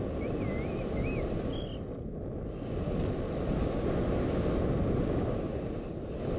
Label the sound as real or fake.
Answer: real